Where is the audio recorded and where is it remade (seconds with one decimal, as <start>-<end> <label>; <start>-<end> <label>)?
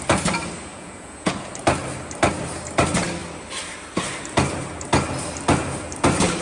0.0-0.7 recorded; 0.7-1.5 remade; 1.5-6.4 recorded